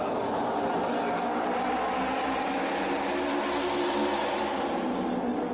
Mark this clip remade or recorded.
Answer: recorded